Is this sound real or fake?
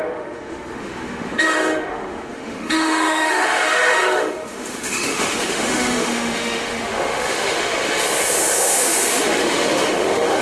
fake